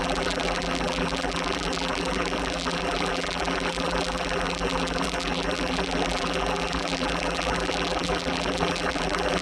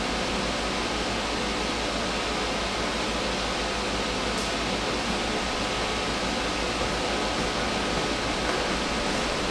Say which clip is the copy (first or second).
first